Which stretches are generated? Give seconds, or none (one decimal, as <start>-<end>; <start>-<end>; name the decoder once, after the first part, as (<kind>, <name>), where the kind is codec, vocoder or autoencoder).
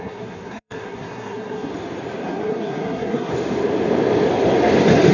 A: 0.0-1.7 (codec, SNAC); 2.2-3.3